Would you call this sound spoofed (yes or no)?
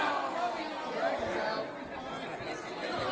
no